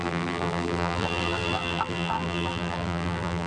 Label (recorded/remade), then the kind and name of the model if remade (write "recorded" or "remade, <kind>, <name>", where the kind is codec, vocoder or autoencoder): remade, vocoder, BigVGAN v2